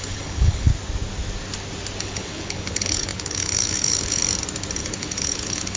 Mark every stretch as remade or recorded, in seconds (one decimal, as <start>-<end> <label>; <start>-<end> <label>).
0.0-0.7 remade; 0.7-2.0 recorded; 2.0-4.2 remade; 4.2-4.8 recorded; 4.8-5.8 remade